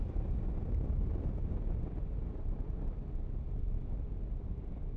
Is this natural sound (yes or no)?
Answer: yes